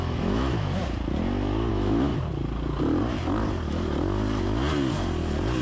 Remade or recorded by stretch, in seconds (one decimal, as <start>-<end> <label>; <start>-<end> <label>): 0.0-0.8 remade; 0.8-1.7 recorded; 1.7-2.1 remade; 2.1-5.6 recorded